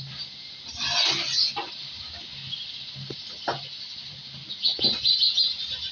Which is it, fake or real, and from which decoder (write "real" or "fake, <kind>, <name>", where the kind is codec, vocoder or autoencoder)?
real